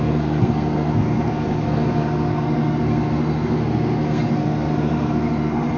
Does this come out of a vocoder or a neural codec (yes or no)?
yes